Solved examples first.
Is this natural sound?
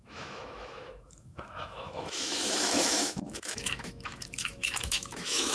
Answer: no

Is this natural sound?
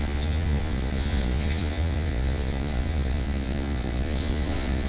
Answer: no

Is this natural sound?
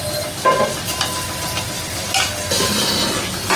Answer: yes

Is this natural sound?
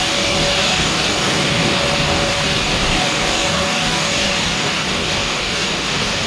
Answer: no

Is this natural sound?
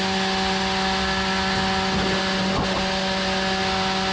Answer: yes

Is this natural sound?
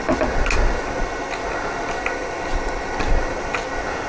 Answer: yes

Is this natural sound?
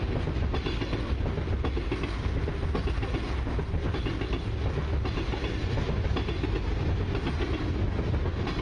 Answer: yes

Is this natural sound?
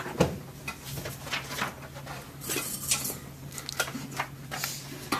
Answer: yes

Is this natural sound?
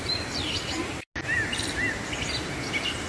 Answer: yes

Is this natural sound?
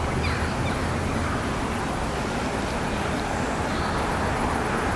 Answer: yes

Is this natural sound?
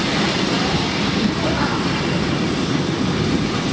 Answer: yes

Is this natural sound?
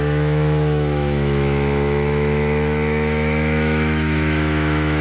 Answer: no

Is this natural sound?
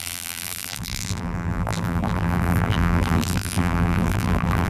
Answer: no